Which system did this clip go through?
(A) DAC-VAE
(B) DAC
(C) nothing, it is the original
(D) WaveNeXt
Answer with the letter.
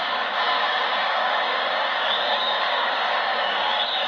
B